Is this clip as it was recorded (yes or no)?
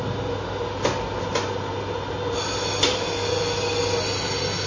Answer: yes